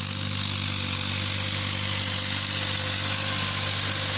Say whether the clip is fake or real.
real